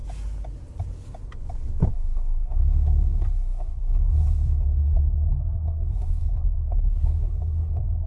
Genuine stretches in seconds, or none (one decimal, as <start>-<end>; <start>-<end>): 0.0-1.9

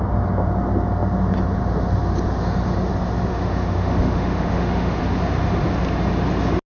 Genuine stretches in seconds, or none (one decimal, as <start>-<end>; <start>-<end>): 0.0-3.3; 5.0-6.7

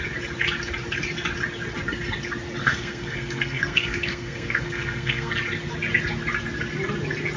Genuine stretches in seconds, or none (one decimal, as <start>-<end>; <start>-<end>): 0.0-2.6; 5.3-7.4

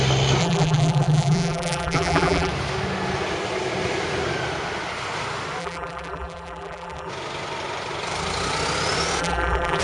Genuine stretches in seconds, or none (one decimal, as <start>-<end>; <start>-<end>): 0.0-0.4; 2.5-5.6; 7.1-9.2

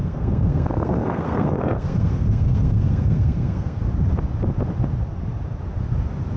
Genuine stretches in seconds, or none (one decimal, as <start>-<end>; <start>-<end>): 3.8-6.4

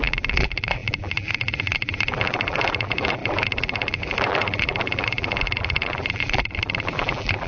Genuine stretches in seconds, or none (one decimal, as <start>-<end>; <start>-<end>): none

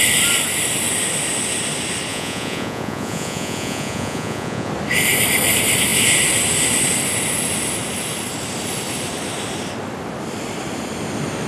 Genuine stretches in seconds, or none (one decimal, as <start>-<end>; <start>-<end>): 0.0-2.1; 4.7-11.5